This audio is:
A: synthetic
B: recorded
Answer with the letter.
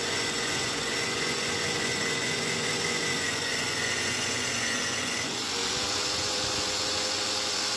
A